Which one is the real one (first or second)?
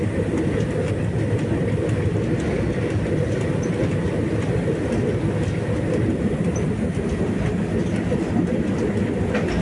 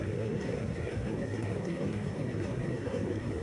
first